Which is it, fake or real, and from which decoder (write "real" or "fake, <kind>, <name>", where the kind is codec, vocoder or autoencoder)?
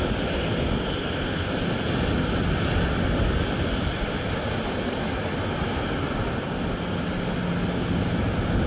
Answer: real